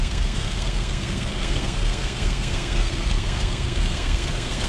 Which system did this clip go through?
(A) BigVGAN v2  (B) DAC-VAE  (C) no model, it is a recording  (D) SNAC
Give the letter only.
D